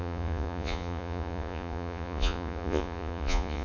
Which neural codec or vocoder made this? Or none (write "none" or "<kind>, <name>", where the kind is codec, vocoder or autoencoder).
vocoder, Vocos